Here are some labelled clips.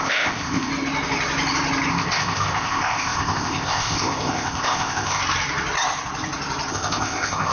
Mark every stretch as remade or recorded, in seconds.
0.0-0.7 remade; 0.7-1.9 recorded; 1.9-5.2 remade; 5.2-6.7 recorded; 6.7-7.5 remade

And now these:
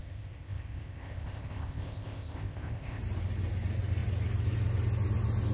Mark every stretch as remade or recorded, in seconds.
0.0-3.0 remade; 3.0-5.5 recorded

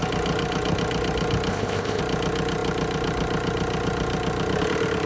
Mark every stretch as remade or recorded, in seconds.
0.0-1.5 recorded; 1.5-2.0 remade; 2.0-5.1 recorded

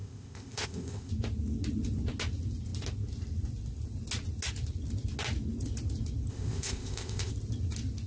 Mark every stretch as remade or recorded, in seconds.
0.0-1.1 remade; 1.1-6.3 recorded; 6.3-7.3 remade; 7.3-8.1 recorded

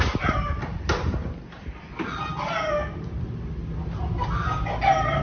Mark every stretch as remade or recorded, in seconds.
0.0-5.2 recorded

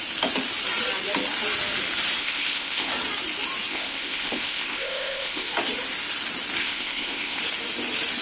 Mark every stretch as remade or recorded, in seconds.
0.0-2.2 recorded; 2.2-2.9 remade; 2.9-3.7 recorded; 3.7-5.5 remade; 5.5-6.6 recorded; 6.6-7.4 remade; 7.4-8.2 recorded

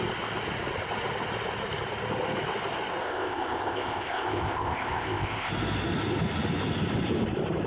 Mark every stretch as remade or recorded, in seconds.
0.0-3.0 recorded; 3.0-5.5 remade; 5.5-7.7 recorded